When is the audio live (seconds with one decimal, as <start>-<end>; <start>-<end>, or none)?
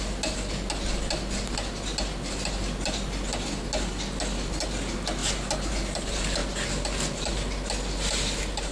0.0-8.7